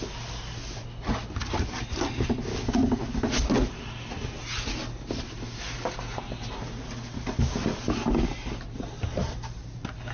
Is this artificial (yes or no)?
no